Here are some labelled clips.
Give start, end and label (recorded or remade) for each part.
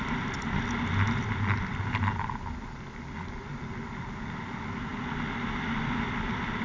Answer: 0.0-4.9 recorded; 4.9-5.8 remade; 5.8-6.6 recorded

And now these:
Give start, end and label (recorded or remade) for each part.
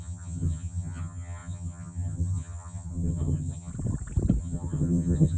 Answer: 0.0-3.7 remade; 3.7-4.4 recorded; 4.4-5.4 remade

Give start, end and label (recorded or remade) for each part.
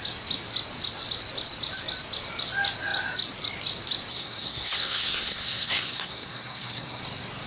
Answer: 0.0-4.1 recorded; 4.1-7.0 remade; 7.0-7.5 recorded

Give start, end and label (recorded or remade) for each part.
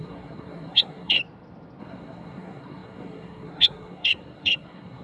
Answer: 0.0-1.2 remade; 1.2-1.8 recorded; 1.8-5.0 remade